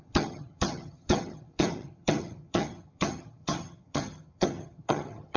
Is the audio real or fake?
fake